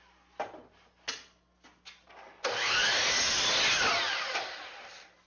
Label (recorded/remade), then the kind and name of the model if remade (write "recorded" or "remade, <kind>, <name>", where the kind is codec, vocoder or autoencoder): recorded